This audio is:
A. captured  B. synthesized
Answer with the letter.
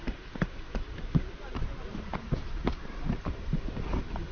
B